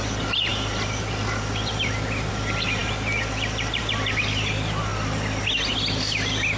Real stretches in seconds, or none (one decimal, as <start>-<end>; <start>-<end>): 4.9-5.7